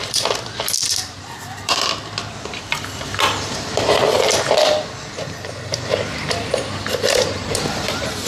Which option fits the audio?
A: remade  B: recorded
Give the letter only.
A